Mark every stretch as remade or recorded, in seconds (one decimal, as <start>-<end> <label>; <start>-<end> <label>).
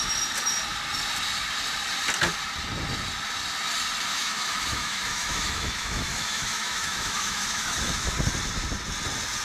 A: 0.0-4.1 recorded; 4.1-8.1 remade; 8.1-9.4 recorded